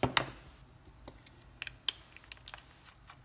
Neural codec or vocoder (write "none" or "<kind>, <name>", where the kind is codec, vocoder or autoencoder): none